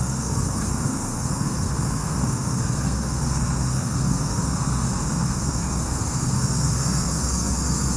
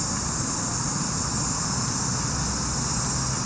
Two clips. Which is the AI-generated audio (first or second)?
first